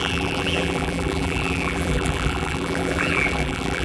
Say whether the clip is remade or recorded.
remade